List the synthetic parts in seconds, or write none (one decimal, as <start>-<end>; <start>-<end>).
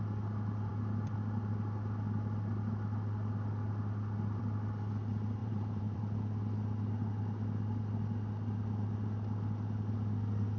5.4-6.0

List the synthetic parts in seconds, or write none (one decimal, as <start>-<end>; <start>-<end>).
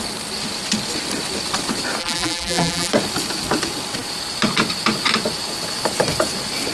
2.0-2.9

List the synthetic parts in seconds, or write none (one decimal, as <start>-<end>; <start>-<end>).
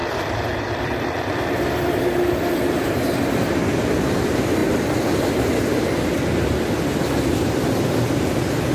0.0-3.2; 4.6-8.7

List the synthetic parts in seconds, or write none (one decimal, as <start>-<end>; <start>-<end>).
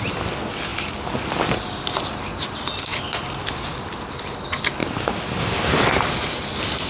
2.9-3.5